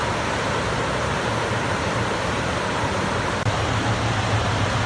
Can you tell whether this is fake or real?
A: fake